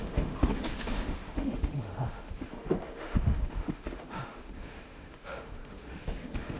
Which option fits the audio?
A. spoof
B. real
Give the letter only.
A